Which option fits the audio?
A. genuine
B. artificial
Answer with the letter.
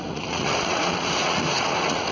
B